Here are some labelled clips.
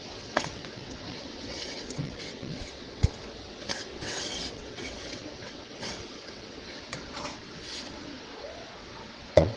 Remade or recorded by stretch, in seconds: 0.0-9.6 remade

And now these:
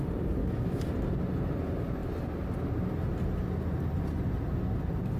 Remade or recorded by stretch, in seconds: 0.0-0.4 recorded; 0.4-0.9 remade; 0.9-5.2 recorded